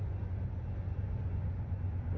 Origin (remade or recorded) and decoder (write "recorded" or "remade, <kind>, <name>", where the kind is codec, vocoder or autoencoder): remade, vocoder, Vocos